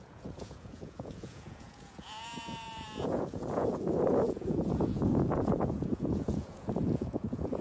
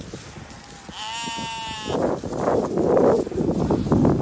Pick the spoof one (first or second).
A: first